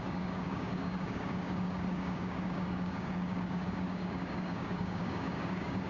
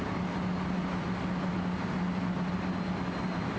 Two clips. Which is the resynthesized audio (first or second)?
first